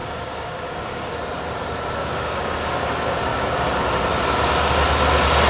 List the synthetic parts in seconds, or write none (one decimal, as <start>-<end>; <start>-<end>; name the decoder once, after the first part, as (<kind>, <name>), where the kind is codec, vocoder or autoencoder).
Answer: 0.0-1.1 (codec, DAC); 2.0-2.8